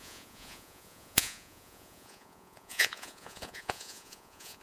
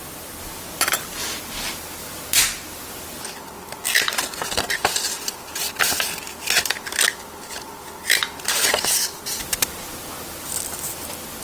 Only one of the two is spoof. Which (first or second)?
first